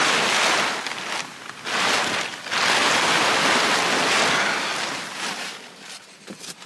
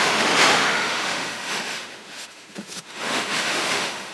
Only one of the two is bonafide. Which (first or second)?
first